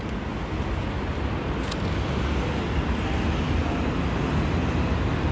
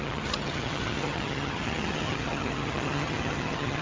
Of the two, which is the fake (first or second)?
second